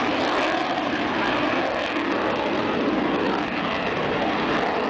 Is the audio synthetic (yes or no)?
no